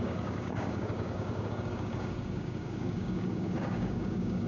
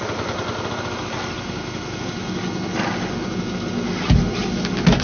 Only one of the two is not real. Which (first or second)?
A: first